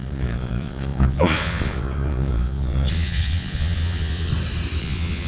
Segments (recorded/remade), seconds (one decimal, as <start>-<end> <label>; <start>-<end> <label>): 0.0-4.3 remade; 4.3-4.8 recorded; 4.8-5.3 remade